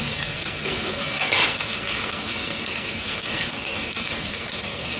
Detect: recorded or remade remade